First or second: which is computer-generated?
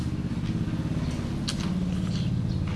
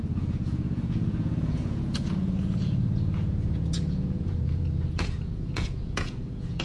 second